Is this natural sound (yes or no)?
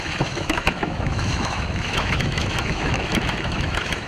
no